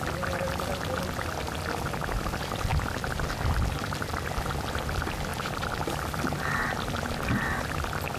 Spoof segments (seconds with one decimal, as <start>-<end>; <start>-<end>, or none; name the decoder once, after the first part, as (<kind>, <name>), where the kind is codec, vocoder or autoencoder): none

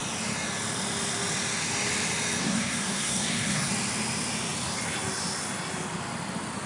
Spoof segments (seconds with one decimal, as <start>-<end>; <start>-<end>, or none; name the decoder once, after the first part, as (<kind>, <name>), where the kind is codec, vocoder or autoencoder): 2.4-3.7 (codec, SNAC)

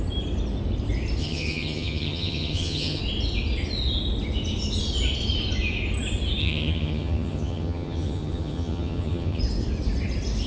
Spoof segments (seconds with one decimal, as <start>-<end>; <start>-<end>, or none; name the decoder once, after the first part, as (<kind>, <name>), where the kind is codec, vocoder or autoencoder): 1.2-3.0 (vocoder, HiFi-GAN); 6.4-9.4

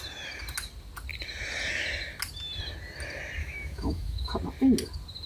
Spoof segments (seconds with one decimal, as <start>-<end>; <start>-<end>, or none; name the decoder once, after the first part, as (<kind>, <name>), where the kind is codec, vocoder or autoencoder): 3.4-4.3 (autoencoder, DAC-VAE)

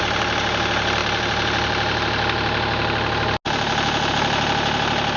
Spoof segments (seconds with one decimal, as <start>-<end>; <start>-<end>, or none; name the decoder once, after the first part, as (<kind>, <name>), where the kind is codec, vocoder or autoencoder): none